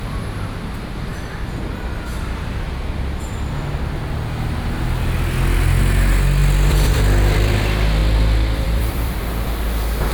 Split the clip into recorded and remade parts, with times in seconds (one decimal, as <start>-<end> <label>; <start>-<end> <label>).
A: 0.0-6.4 recorded; 6.4-7.6 remade; 7.6-8.0 recorded; 8.0-9.2 remade; 9.2-10.1 recorded